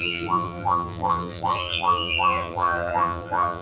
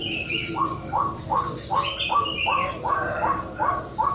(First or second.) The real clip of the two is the second